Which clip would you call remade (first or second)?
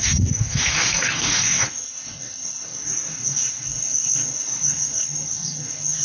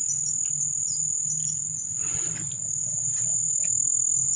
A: first